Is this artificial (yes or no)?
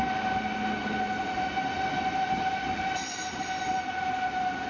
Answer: no